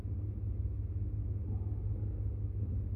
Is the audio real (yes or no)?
yes